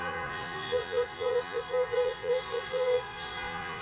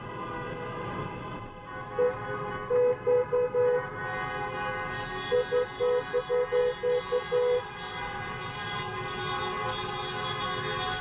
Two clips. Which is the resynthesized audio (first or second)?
first